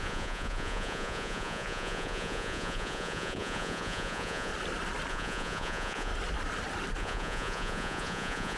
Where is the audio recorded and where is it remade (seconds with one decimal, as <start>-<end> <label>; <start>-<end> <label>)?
0.0-4.5 remade; 4.5-5.1 recorded; 5.1-6.1 remade; 6.1-7.0 recorded; 7.0-8.6 remade